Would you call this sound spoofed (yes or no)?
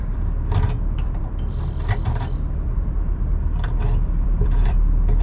yes